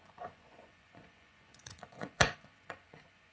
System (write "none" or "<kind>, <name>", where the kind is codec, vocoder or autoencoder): vocoder, Vocos